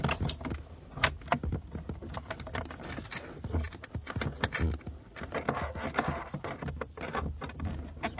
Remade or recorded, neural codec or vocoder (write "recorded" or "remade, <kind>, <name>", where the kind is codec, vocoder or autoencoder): recorded